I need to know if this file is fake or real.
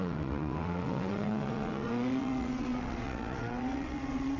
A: fake